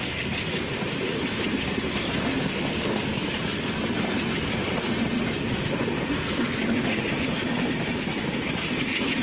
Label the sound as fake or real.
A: real